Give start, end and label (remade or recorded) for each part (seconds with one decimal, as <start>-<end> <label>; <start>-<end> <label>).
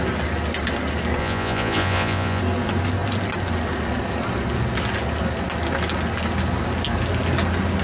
0.0-1.2 recorded; 1.2-2.4 remade; 2.4-7.8 recorded